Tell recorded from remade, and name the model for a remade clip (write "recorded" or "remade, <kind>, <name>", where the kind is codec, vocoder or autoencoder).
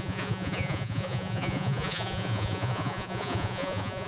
remade, vocoder, Vocos